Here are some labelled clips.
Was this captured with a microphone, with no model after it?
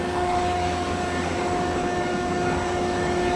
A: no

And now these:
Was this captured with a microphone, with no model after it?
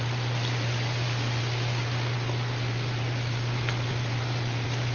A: yes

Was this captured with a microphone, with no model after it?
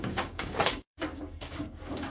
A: no